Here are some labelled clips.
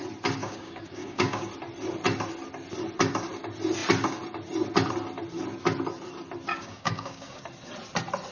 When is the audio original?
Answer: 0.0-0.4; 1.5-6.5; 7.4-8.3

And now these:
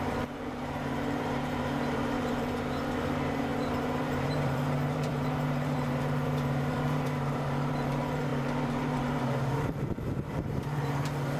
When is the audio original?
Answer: none

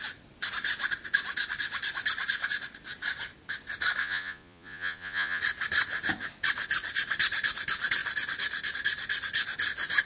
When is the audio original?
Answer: 0.0-4.0; 5.4-10.1

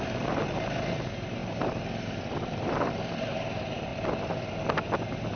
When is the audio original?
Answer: 3.9-4.5

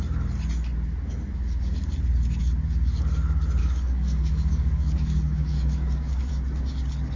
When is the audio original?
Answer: 0.0-3.6; 6.3-7.2

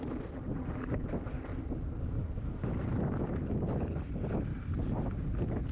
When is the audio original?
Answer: 0.0-5.7